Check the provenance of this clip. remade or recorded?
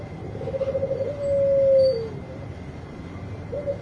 recorded